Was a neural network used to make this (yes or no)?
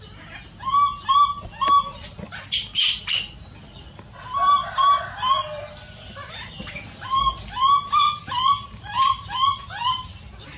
no